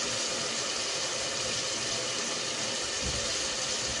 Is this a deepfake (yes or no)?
no